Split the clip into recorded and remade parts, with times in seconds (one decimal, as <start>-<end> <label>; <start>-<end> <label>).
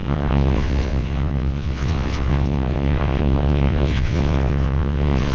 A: 0.0-5.3 remade